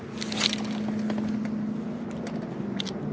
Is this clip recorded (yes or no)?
yes